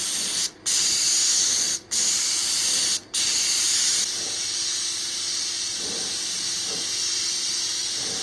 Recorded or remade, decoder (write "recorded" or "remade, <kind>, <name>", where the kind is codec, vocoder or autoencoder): recorded